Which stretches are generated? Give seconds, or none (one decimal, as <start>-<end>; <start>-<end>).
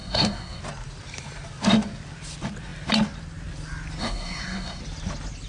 0.0-0.6; 4.0-4.8